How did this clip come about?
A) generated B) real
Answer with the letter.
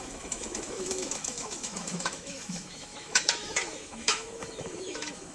A